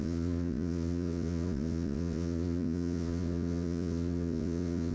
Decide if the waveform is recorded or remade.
remade